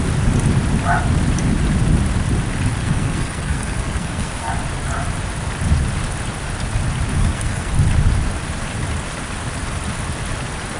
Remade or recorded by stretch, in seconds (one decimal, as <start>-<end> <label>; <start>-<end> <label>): 0.0-2.8 recorded; 2.8-4.5 remade; 4.5-7.1 recorded; 7.1-7.7 remade; 7.7-10.8 recorded